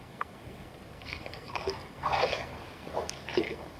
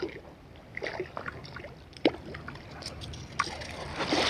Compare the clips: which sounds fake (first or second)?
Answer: first